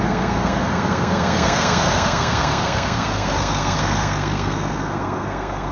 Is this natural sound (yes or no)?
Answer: no